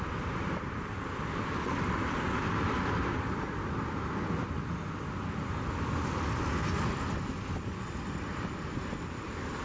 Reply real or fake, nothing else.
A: real